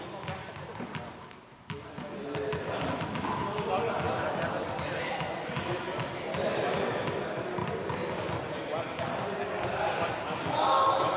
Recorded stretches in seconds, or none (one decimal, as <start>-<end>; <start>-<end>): 0.0-11.2